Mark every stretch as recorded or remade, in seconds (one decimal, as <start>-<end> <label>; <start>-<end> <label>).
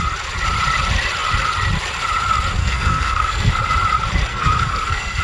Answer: 0.0-2.6 recorded; 2.6-3.5 remade; 3.5-4.3 recorded; 4.3-5.2 remade